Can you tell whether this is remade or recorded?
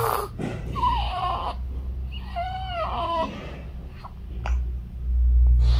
recorded